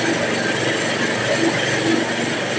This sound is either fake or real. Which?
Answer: real